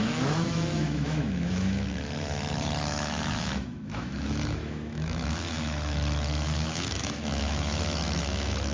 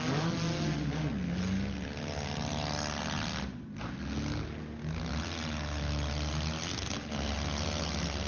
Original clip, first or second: second